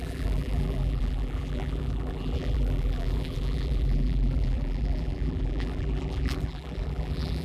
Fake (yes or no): yes